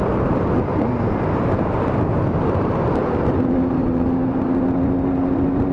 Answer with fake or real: real